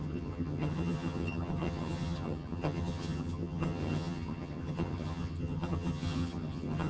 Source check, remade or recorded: remade